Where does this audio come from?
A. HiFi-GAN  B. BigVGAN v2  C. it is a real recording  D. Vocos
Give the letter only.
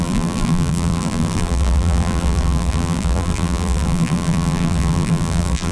B